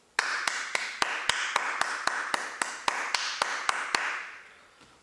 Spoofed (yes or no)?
no